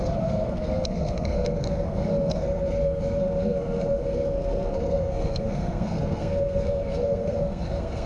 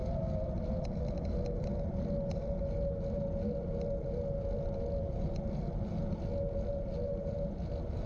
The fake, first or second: first